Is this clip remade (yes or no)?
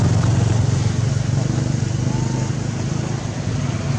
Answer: no